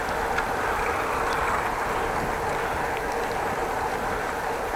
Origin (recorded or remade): recorded